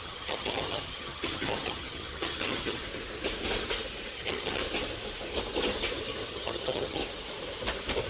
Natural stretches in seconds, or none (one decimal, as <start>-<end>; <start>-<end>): 2.8-4.1; 4.6-6.3; 7.0-8.1